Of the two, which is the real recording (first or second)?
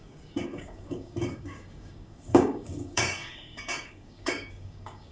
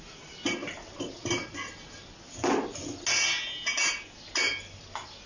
second